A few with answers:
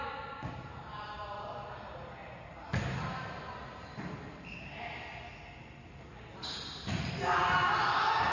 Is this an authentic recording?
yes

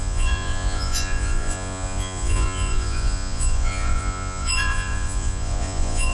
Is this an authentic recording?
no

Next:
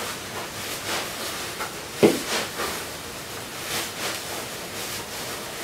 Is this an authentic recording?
yes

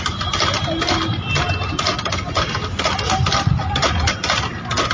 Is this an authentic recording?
yes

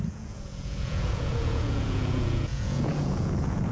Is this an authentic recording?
no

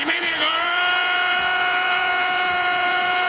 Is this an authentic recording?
no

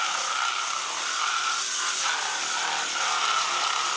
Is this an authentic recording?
yes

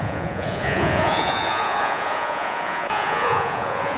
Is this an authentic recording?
no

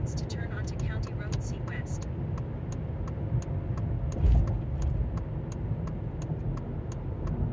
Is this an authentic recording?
yes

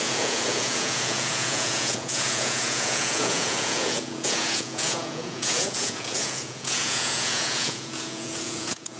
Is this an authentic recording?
no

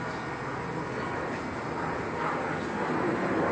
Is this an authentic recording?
yes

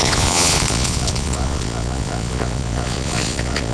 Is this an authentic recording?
no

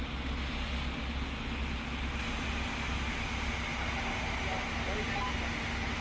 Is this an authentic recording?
yes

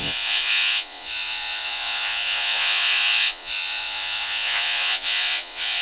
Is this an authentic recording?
no